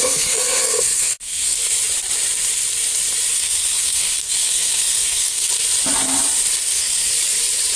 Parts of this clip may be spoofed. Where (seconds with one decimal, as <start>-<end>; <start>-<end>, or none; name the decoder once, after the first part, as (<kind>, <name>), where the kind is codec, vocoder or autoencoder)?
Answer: 0.0-1.6 (codec, SNAC); 3.3-5.5; 6.6-7.1